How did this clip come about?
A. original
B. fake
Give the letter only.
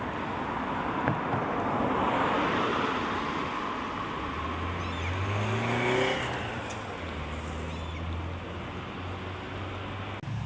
A